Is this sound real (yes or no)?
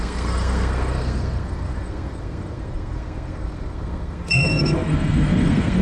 no